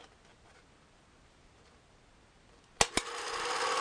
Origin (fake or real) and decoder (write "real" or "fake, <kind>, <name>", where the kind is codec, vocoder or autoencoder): real